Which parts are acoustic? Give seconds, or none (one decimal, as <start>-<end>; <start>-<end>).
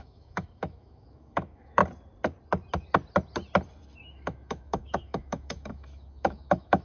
1.8-4.0